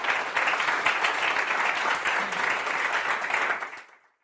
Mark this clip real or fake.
real